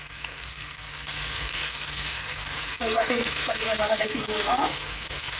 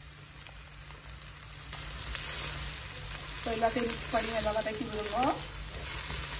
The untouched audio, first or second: second